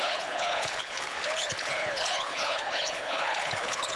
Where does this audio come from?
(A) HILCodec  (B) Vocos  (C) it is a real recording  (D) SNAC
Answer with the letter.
A